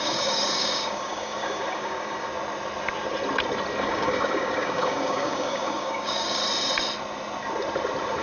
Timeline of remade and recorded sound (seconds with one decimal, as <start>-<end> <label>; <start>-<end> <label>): 0.0-2.3 remade; 2.3-3.8 recorded; 3.8-6.4 remade; 6.4-8.2 recorded